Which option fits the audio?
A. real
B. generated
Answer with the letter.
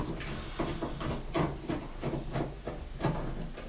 A